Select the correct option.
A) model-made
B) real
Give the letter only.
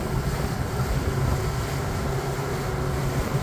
B